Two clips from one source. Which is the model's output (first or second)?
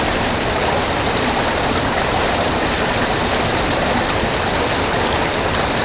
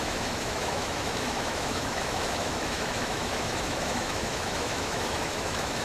second